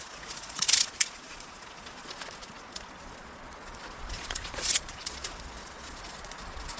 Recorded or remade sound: remade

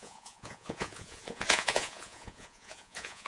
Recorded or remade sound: remade